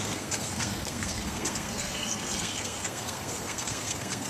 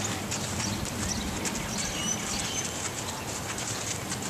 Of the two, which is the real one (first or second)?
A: second